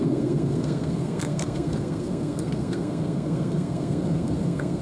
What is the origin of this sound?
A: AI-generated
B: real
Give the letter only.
A